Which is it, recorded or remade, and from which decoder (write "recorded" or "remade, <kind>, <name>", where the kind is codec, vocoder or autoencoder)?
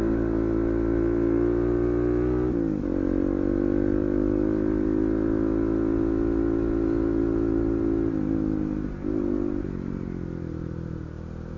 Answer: recorded